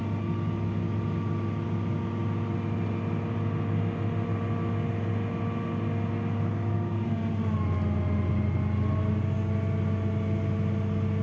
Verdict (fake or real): real